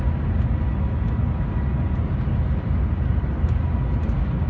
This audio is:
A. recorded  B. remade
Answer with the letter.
A